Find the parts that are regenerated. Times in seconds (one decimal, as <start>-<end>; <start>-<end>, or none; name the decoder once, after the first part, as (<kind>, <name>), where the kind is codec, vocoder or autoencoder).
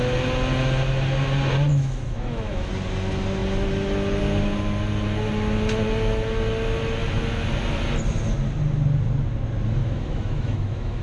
1.7-2.7 (autoencoder, DAC-VAE); 9.8-11.0